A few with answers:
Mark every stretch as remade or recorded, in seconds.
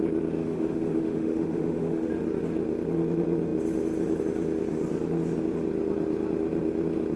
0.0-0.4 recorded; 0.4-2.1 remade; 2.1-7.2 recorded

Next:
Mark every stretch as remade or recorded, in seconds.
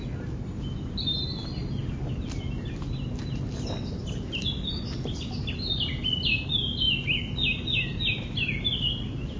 0.0-9.4 recorded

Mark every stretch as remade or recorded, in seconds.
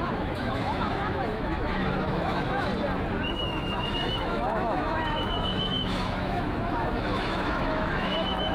0.0-2.7 remade; 2.7-3.3 recorded; 3.3-8.5 remade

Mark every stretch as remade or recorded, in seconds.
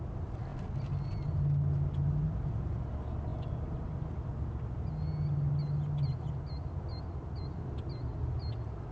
0.0-8.9 recorded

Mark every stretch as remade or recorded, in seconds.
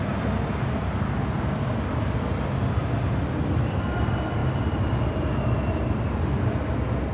0.0-4.4 recorded; 4.4-5.0 remade; 5.0-7.1 recorded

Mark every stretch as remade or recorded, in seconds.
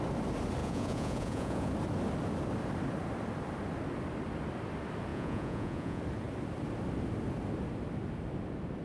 0.0-0.6 recorded; 0.6-1.7 remade; 1.7-5.1 recorded; 5.1-6.0 remade; 6.0-8.8 recorded